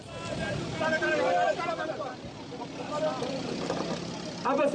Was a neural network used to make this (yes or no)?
no